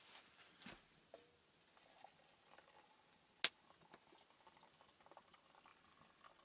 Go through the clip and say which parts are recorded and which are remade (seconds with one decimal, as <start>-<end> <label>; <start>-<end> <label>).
0.0-6.4 recorded